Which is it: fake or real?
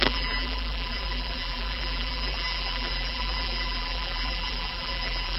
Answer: fake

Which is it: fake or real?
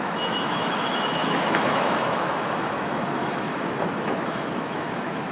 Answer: fake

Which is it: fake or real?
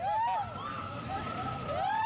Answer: real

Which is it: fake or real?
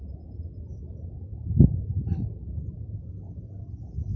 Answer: real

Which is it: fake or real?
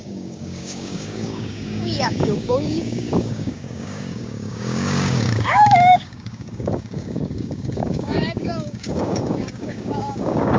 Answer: fake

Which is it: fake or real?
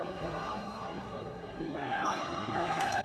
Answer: fake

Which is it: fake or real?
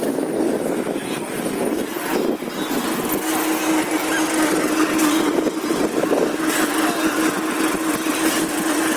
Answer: real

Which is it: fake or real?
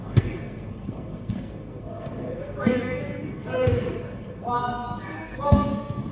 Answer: fake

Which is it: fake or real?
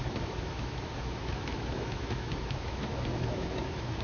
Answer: fake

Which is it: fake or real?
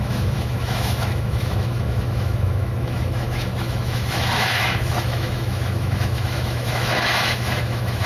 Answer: fake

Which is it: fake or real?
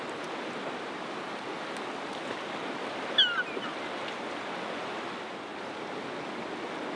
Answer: real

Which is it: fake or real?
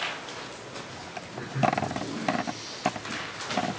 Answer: real